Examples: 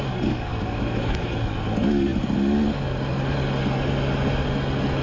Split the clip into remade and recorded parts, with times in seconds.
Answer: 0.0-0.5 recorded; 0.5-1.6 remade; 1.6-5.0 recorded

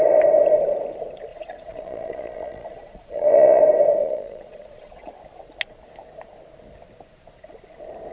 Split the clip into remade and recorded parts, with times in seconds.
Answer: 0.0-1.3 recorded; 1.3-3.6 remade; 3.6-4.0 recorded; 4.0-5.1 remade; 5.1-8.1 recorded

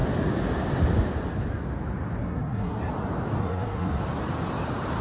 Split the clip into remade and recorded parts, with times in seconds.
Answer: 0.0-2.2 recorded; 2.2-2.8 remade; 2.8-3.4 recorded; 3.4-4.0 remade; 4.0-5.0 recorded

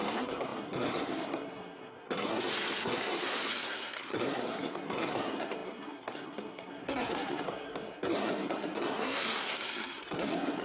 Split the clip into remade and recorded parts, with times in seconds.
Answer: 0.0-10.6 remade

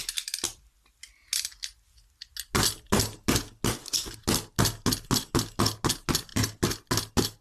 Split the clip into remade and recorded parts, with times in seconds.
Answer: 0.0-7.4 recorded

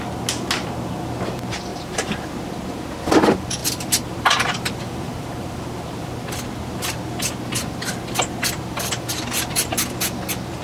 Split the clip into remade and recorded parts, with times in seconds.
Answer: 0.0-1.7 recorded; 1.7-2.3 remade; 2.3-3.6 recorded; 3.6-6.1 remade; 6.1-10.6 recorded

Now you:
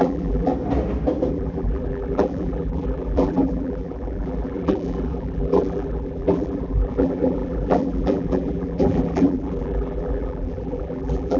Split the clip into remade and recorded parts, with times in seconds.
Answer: 0.0-0.5 remade; 0.5-1.3 recorded; 1.3-11.4 remade